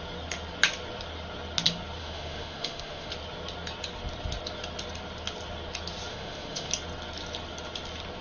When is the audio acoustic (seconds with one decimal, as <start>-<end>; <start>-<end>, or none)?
0.0-2.0; 3.1-6.1; 6.7-8.2